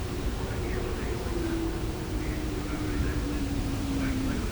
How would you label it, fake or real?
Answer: fake